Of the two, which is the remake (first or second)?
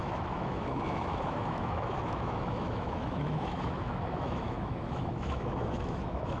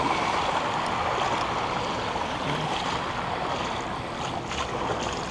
first